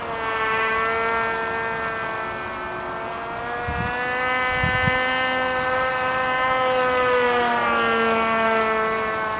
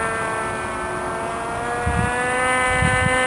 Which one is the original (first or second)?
first